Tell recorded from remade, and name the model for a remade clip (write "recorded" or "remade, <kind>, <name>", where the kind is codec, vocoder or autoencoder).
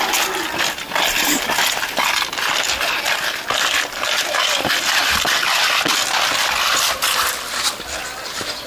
recorded